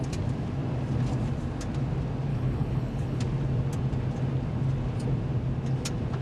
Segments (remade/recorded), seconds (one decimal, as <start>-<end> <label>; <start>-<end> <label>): 0.0-2.3 recorded; 2.3-3.2 remade; 3.2-6.2 recorded